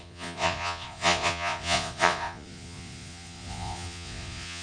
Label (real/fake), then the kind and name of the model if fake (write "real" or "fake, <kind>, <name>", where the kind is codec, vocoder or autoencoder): fake, vocoder, Vocos